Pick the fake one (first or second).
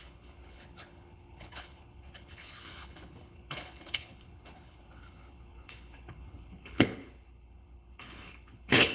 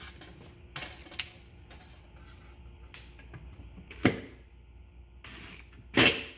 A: first